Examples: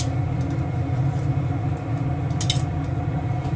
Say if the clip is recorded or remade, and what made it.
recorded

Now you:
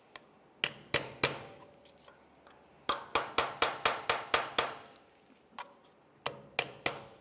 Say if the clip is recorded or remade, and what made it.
recorded